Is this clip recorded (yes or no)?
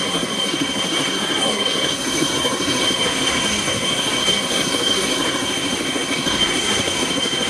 no